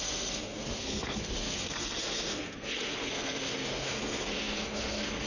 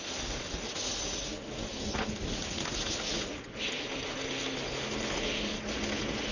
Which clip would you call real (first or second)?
second